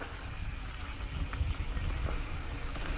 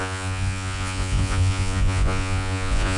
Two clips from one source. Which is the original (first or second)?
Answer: first